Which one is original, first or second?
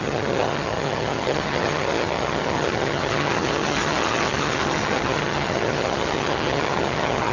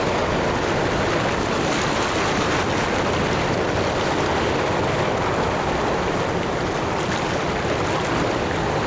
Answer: second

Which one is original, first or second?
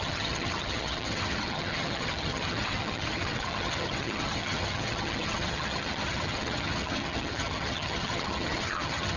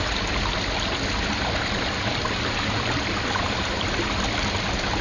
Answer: second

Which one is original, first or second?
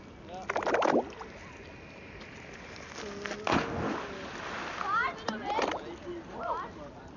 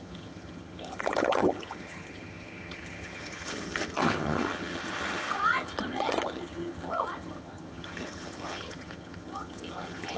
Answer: first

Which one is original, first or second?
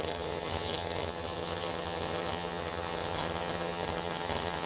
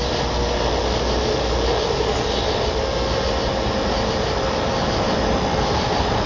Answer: second